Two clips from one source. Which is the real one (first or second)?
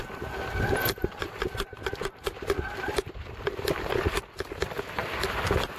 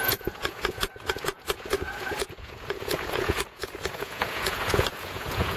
first